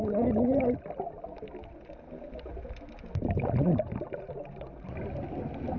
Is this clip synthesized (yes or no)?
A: no